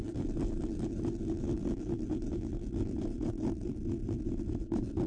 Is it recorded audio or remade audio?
recorded